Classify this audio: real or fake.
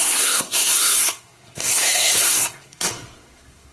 fake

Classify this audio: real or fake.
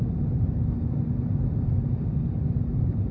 fake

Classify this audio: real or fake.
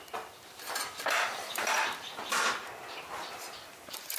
fake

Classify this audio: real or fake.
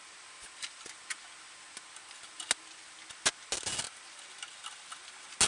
real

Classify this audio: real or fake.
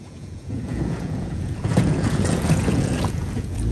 fake